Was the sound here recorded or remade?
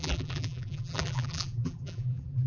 remade